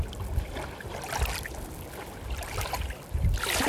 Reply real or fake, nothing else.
real